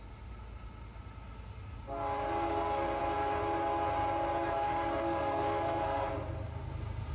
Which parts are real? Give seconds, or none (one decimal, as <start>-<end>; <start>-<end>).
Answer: 0.0-2.5; 3.0-4.6; 6.1-7.1